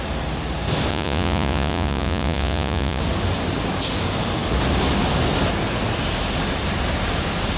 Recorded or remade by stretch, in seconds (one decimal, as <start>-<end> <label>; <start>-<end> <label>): 0.0-0.9 recorded; 0.9-3.0 remade; 3.0-7.6 recorded

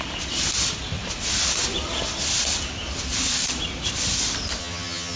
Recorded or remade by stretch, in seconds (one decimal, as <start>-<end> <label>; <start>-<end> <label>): 0.0-4.6 recorded; 4.6-5.2 remade